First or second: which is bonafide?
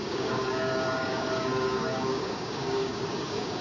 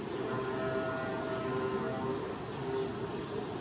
second